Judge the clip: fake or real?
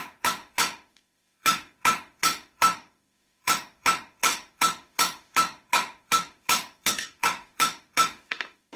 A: fake